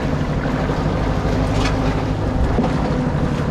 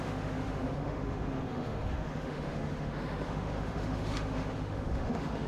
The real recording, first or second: first